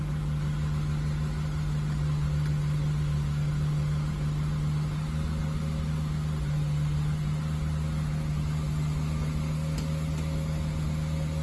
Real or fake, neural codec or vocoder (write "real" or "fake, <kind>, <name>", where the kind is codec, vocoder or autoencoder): real